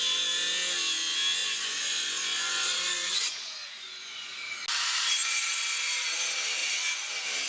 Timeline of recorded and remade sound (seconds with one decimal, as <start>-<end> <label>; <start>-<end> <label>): 0.0-1.4 recorded; 1.4-4.4 remade; 4.4-6.6 recorded; 6.6-7.1 remade; 7.1-7.5 recorded